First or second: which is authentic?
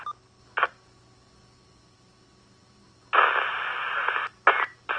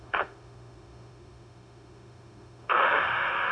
first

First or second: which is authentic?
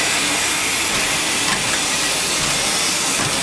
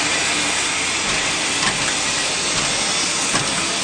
second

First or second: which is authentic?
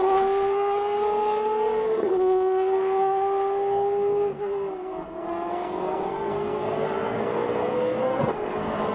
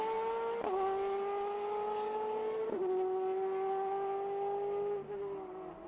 second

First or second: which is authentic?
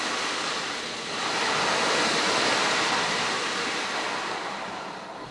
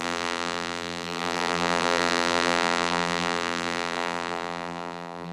first